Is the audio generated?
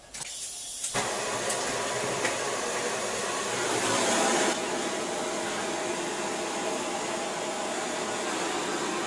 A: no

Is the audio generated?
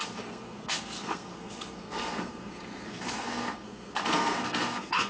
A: yes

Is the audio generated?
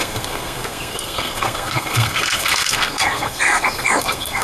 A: yes